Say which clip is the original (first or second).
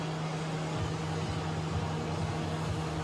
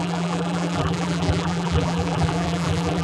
first